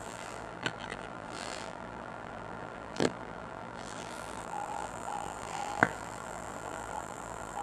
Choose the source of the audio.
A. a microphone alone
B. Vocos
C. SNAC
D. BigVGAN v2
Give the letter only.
D